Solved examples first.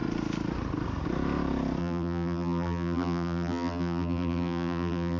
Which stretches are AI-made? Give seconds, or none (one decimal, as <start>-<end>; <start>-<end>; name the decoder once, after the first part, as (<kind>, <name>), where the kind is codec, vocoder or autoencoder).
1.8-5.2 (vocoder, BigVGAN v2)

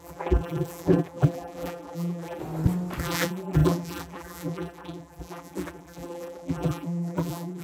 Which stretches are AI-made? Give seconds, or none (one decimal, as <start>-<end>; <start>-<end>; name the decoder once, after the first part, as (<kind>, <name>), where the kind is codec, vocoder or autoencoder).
0.0-2.4 (vocoder, BigVGAN v2); 3.0-7.6

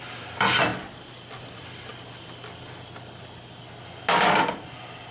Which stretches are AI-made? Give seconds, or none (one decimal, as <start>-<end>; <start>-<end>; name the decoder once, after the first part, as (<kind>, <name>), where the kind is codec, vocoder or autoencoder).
none